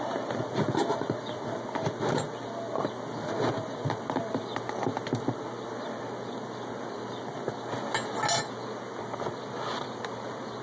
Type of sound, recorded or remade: recorded